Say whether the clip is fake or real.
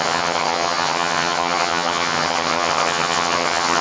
fake